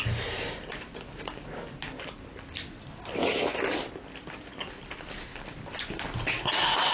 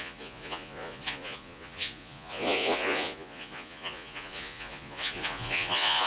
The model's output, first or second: second